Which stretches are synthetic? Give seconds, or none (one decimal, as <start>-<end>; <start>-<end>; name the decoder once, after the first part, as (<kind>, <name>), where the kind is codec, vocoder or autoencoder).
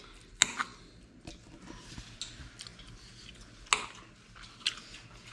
none